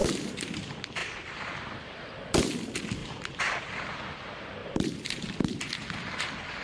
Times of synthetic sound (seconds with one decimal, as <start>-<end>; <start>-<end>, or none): 0.0-0.6; 3.0-3.7; 4.6-5.2